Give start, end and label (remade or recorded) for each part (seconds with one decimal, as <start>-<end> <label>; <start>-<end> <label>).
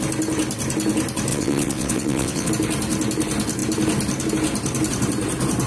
0.0-1.3 recorded; 1.3-2.5 remade; 2.5-5.7 recorded